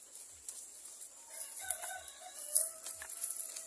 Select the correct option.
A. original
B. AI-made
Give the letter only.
A